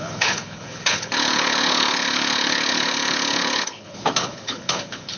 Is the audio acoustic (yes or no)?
no